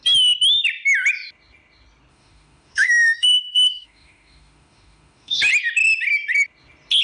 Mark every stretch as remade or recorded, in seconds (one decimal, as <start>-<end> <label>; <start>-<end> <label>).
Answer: 0.0-2.1 recorded; 2.1-5.4 remade; 5.4-7.0 recorded